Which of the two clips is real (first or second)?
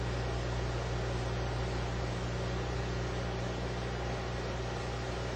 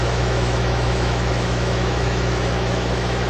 first